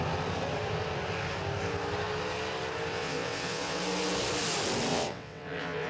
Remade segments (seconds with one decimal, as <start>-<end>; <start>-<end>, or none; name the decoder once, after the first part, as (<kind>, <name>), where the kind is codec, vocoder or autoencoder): 2.9-3.8 (vocoder, WaveNeXt); 4.9-5.9